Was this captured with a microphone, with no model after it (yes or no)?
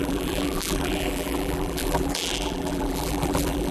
no